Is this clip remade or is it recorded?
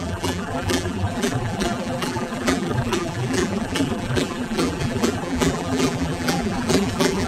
remade